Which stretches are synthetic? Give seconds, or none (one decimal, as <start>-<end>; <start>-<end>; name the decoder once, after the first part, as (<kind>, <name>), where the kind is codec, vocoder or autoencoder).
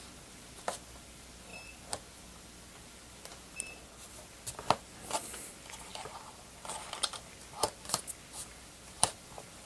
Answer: none